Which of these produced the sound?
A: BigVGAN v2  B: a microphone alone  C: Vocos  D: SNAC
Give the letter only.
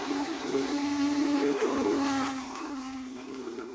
D